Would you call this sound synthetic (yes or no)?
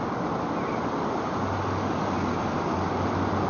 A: no